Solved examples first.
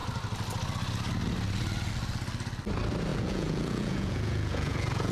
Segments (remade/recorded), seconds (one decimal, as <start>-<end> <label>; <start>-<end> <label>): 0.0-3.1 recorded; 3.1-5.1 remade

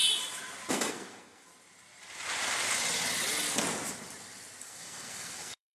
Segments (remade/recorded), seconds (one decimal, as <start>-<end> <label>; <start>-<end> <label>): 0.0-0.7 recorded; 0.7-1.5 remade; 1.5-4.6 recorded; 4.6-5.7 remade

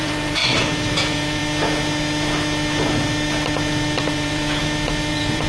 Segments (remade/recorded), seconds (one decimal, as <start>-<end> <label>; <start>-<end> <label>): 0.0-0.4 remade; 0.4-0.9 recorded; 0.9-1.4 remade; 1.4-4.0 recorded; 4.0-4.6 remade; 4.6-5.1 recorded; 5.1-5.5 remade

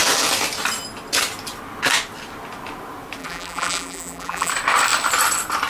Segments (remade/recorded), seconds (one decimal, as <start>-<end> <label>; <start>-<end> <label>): 0.0-3.2 recorded; 3.2-4.5 remade; 4.5-5.7 recorded

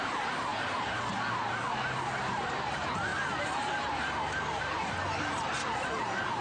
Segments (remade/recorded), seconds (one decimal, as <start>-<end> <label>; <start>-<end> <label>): 0.0-0.5 remade; 0.5-2.6 recorded; 2.6-3.1 remade; 3.1-4.6 recorded; 4.6-6.4 remade

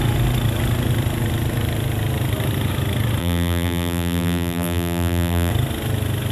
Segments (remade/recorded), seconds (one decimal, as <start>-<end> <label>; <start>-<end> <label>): 0.0-3.2 recorded; 3.2-5.5 remade; 5.5-6.3 recorded

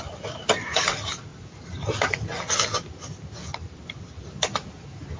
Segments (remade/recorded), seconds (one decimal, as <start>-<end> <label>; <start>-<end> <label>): 0.0-5.2 recorded